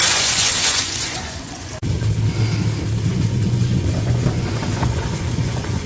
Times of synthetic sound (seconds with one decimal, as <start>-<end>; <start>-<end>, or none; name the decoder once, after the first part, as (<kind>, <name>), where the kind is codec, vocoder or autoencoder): 0.0-1.7 (vocoder, Vocos); 3.1-5.9